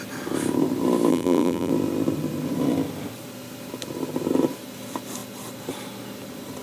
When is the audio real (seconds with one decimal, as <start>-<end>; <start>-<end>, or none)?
0.0-1.1; 1.7-6.6